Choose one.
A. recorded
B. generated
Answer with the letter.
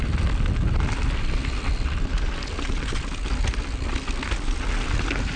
A